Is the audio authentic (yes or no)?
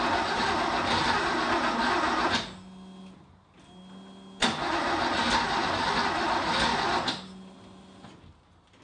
yes